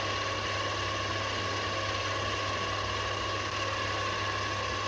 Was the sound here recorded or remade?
recorded